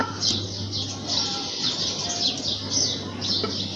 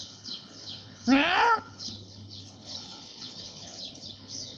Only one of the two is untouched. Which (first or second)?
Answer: first